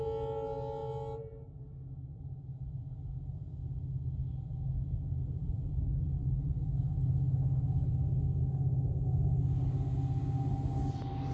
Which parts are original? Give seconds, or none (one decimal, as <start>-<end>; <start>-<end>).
0.0-11.3